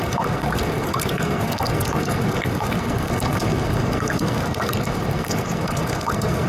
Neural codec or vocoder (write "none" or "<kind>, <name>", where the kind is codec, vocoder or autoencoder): codec, SNAC